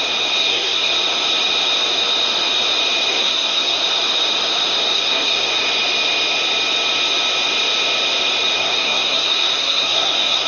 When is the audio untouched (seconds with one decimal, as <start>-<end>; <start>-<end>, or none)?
0.0-0.4; 0.9-3.1; 3.8-4.9; 5.5-8.6